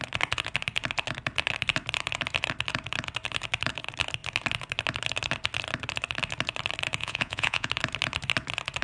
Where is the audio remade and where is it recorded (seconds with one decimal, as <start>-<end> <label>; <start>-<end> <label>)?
0.0-7.0 recorded; 7.0-7.7 remade; 7.7-8.8 recorded